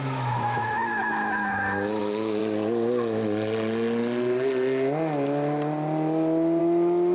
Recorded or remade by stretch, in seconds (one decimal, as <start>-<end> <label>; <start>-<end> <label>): 0.0-2.4 remade; 2.4-6.6 recorded; 6.6-7.1 remade